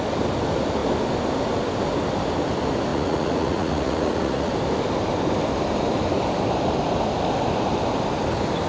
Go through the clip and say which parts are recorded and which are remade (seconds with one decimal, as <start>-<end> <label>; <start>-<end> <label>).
0.0-2.9 recorded; 2.9-4.5 remade; 4.5-8.7 recorded